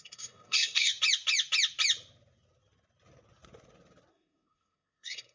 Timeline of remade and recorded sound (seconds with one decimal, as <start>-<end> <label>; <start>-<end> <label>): 0.0-0.9 remade; 0.9-4.1 recorded; 4.1-5.3 remade